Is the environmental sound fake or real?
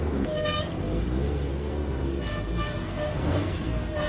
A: fake